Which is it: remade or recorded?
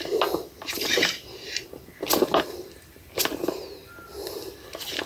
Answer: recorded